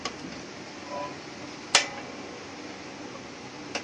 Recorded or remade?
recorded